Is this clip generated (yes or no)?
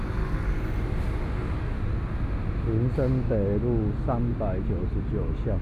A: no